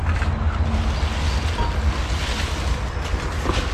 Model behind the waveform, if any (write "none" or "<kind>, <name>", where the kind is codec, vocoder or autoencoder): none